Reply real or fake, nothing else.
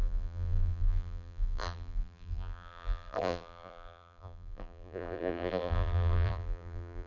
fake